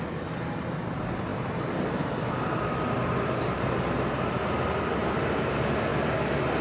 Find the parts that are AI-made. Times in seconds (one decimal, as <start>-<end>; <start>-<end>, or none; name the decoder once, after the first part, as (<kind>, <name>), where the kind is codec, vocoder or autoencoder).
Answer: none